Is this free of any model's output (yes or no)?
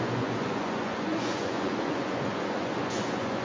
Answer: no